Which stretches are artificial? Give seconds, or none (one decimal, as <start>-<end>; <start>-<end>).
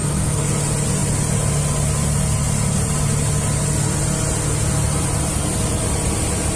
0.0-0.5